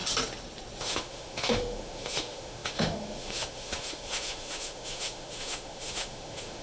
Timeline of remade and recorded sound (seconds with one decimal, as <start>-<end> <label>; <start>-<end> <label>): 0.0-0.8 recorded; 0.8-6.6 remade